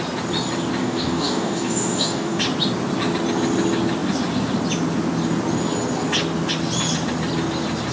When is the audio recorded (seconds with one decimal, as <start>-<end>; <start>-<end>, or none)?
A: 0.0-0.8; 2.4-7.9